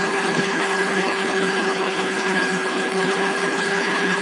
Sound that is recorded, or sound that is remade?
remade